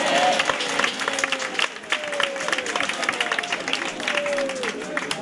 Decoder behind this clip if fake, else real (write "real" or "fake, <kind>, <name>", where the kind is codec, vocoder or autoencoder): real